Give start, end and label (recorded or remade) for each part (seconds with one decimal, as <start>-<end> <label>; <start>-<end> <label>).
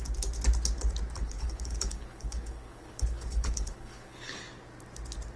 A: 0.0-1.2 recorded; 1.2-4.4 remade; 4.4-5.4 recorded